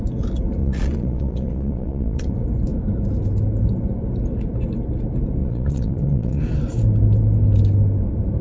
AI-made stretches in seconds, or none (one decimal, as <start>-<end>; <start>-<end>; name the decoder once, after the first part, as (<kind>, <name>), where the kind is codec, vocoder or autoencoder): 0.6-2.3 (vocoder, Vocos); 5.4-6.4